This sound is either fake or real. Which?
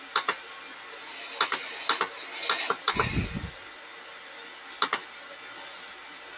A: real